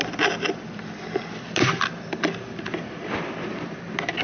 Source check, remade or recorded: recorded